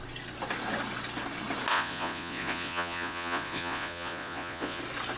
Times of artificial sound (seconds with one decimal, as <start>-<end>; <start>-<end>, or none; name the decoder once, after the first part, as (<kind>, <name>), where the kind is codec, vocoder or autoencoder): 1.7-4.8 (vocoder, Vocos)